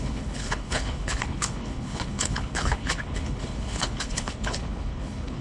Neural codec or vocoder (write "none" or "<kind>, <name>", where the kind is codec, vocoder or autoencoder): codec, HILCodec